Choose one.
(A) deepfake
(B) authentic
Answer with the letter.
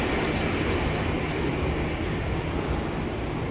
B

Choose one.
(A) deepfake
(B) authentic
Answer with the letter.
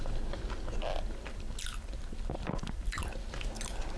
B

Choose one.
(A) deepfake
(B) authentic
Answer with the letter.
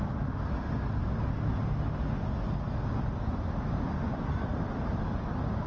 B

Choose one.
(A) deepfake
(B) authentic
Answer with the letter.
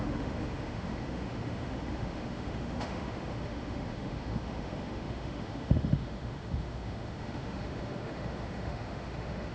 A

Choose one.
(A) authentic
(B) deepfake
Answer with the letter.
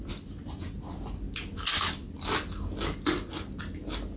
A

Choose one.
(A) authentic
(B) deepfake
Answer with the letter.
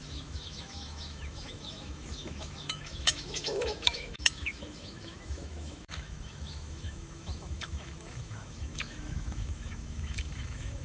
B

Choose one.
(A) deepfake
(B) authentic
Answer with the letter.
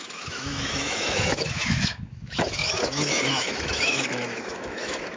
A